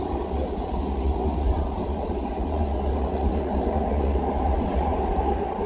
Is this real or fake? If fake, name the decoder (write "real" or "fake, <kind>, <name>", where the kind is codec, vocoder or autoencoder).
fake, vocoder, Vocos